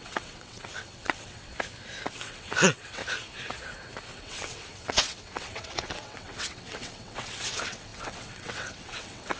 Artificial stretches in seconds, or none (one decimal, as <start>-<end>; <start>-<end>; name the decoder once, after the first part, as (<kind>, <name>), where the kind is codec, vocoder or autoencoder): 0.0-1.5 (vocoder, WaveNeXt); 2.1-3.0; 4.2-9.4